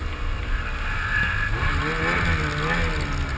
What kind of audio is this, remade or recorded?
recorded